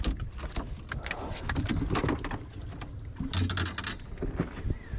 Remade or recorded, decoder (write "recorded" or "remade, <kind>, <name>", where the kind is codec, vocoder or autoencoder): recorded